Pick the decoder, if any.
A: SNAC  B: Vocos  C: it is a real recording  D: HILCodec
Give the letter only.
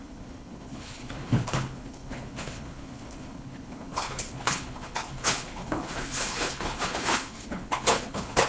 D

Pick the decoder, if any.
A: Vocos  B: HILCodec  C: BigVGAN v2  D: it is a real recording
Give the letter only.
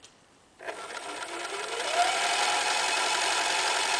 D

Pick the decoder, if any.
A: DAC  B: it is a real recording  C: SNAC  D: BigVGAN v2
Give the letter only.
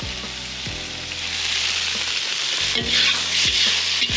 B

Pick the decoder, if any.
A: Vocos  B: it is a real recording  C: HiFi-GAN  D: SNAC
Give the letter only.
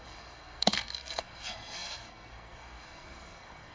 D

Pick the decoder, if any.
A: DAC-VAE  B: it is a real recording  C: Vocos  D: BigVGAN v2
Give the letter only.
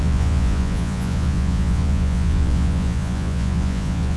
C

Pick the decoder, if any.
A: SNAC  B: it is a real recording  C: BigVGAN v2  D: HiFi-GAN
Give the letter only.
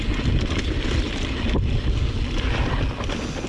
B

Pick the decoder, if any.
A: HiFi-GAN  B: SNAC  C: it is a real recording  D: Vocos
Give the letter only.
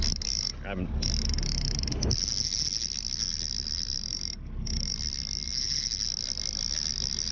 C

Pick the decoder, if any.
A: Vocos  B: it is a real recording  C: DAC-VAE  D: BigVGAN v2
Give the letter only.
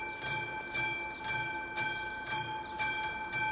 B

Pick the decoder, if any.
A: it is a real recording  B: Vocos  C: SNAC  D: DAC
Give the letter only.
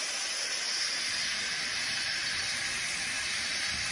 A